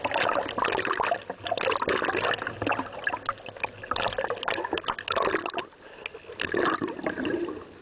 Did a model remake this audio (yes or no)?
no